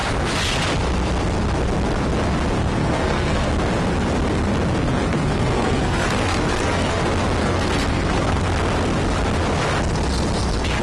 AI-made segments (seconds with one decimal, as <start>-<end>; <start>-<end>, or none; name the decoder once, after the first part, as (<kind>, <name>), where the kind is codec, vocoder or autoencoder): 2.6-3.5 (codec, SNAC); 4.8-7.0; 7.4-8.4